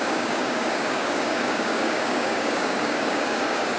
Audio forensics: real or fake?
fake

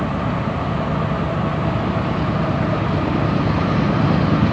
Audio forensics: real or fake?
real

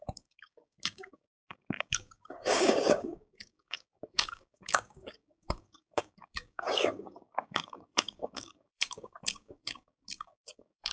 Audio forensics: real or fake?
fake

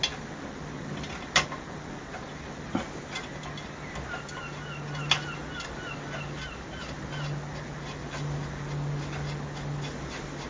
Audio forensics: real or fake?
real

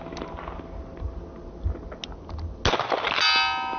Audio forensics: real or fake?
real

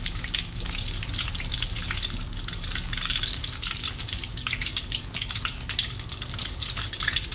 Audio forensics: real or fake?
fake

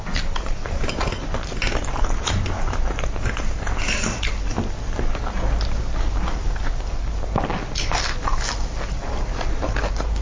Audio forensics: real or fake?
real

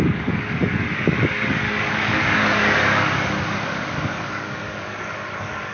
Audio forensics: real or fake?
fake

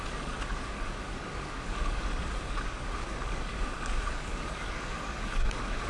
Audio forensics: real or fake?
fake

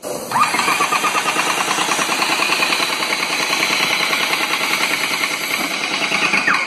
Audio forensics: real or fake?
real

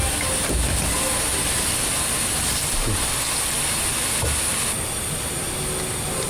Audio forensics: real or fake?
real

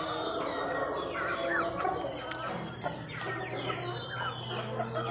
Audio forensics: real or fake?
real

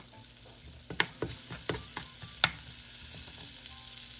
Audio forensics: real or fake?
real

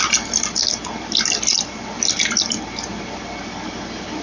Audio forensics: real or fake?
real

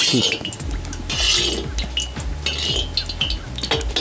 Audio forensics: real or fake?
real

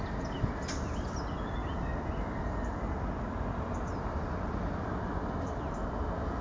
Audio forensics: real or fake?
real